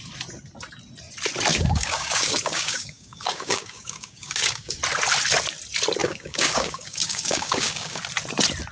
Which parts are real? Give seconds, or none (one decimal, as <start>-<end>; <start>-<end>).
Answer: 0.0-1.5; 4.8-6.0; 8.0-8.7